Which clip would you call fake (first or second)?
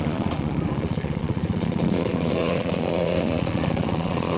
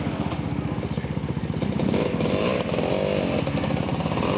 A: first